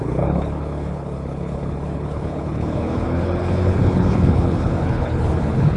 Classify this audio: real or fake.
fake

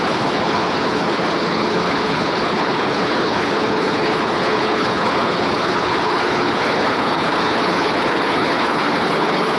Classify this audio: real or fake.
fake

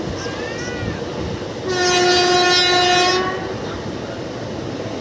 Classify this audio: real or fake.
real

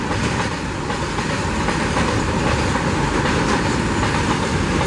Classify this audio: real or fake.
real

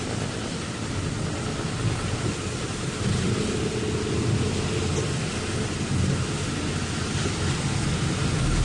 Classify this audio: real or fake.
real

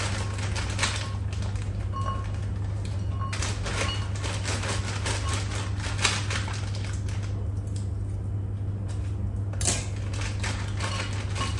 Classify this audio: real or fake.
real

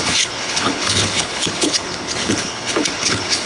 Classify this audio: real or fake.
fake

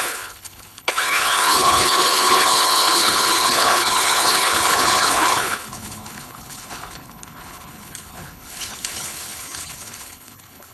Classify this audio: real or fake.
fake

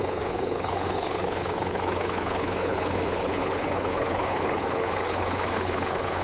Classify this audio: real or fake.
fake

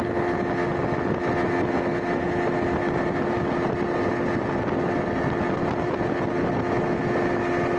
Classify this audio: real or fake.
real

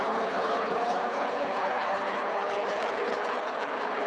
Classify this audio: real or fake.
fake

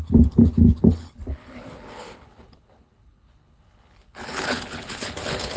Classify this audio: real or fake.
fake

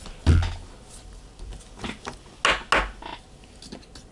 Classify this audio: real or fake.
real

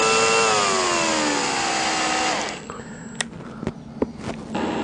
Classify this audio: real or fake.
real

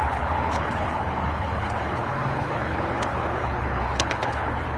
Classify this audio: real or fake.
fake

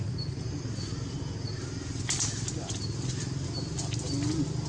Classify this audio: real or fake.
real